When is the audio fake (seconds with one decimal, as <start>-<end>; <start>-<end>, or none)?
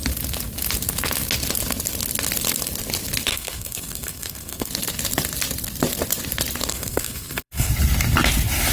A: 3.3-4.7; 6.7-7.7